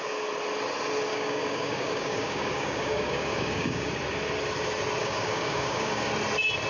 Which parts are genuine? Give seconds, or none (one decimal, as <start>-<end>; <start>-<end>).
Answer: 0.0-1.1; 3.9-5.0; 6.1-6.7